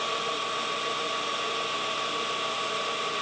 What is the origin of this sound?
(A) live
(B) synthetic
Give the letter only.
A